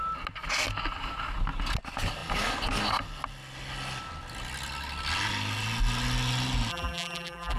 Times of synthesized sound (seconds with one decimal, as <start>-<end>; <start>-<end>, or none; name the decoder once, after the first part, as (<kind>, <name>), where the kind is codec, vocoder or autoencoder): 6.7-7.6 (vocoder, BigVGAN v2)

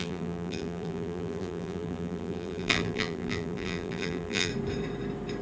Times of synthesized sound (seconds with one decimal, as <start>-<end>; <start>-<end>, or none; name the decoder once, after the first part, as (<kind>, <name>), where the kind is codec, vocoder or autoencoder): 0.0-4.5 (vocoder, BigVGAN v2)

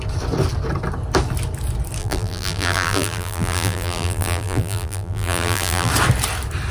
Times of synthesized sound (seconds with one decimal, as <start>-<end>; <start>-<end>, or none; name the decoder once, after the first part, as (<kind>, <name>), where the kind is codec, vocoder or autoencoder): 2.0-5.9 (vocoder, BigVGAN v2)

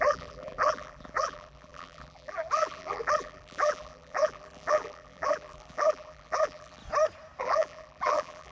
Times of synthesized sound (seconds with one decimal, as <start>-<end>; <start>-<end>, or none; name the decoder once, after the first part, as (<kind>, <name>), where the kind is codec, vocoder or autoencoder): 0.0-6.8 (vocoder, BigVGAN v2); 7.4-8.5

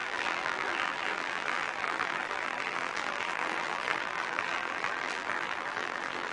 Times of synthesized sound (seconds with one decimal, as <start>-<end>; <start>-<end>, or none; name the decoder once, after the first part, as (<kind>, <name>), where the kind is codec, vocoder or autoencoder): 0.0-6.3 (vocoder, BigVGAN v2)

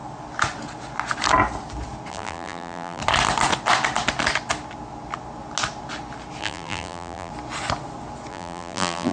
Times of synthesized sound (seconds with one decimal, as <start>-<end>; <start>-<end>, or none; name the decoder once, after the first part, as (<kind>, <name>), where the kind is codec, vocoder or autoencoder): 2.1-3.0 (vocoder, BigVGAN v2); 6.4-7.3; 8.3-9.1

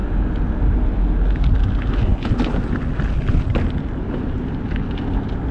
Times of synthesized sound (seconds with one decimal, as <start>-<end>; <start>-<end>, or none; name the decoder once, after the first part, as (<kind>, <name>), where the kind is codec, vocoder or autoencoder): none